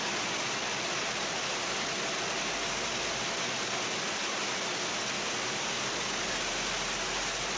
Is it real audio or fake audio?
real